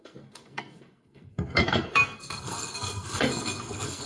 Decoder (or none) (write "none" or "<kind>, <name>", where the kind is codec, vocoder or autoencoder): codec, SNAC